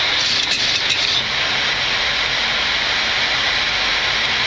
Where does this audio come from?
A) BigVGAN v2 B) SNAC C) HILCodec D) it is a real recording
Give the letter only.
D